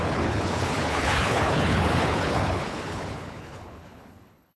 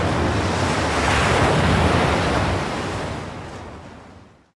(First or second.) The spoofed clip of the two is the first